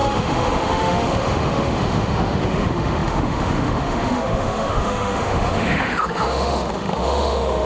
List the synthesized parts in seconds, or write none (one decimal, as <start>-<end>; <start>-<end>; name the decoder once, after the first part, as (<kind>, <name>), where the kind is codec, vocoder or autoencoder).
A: 0.0-7.7 (autoencoder, DAC-VAE)